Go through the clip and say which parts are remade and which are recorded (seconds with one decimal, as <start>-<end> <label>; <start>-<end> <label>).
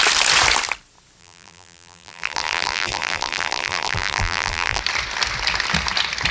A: 0.0-1.2 recorded; 1.2-4.8 remade; 4.8-6.3 recorded